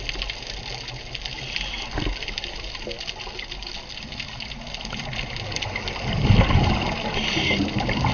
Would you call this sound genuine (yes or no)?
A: yes